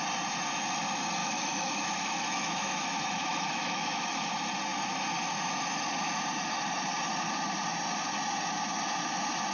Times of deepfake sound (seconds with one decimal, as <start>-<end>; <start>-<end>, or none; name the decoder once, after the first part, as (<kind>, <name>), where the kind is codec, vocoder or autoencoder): 1.2-4.3 (autoencoder, DAC-VAE)